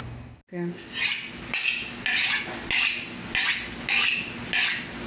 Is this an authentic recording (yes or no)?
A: yes